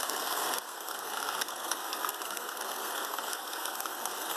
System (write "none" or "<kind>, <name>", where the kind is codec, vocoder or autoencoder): codec, SNAC